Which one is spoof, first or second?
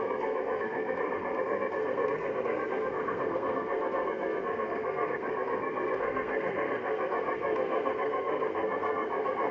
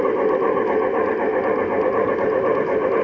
first